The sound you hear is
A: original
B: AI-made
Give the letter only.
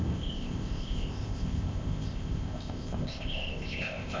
B